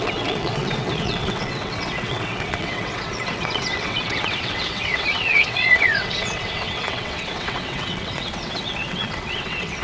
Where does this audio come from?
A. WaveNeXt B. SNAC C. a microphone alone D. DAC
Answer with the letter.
A